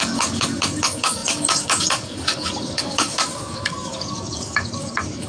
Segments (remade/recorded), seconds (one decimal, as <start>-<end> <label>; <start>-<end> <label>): 0.0-5.3 remade